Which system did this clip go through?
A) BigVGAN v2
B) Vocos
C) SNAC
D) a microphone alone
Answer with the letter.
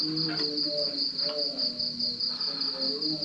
D